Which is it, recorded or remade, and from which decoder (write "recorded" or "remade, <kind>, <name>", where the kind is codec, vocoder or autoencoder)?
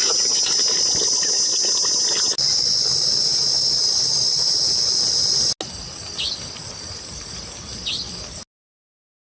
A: recorded